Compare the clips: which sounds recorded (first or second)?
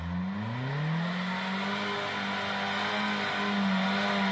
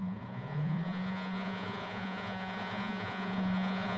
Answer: first